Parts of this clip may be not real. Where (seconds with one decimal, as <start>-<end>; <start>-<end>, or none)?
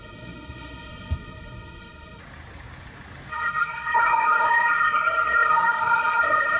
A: 0.0-2.2; 3.3-6.6